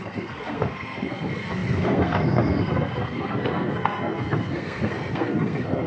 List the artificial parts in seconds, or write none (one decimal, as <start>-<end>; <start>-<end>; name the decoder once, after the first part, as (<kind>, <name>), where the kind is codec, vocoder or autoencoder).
0.0-5.9 (codec, SNAC)